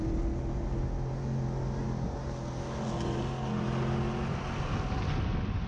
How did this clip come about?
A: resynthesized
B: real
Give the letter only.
B